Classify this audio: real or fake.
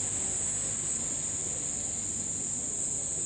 real